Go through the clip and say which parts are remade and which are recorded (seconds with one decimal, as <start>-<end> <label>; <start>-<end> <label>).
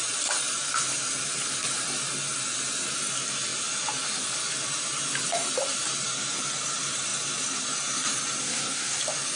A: 0.0-8.4 recorded; 8.4-9.0 remade; 9.0-9.4 recorded